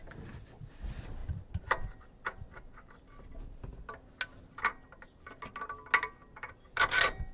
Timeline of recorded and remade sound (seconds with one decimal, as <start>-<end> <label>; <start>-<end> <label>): 0.0-7.3 recorded